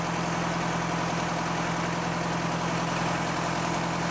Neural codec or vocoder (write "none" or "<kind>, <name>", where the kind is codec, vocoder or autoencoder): none